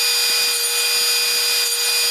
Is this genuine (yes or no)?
yes